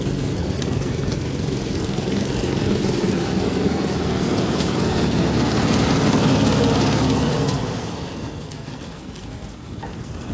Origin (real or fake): fake